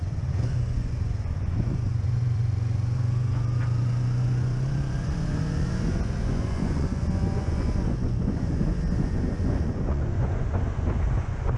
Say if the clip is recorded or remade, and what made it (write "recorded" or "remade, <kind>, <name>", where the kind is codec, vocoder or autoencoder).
remade, vocoder, Vocos